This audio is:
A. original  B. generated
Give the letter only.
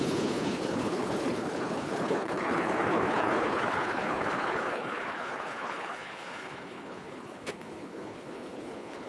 B